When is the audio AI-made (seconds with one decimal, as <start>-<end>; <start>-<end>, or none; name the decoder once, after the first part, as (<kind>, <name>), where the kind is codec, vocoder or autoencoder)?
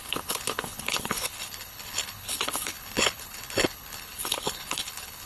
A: 0.0-5.3 (codec, HILCodec)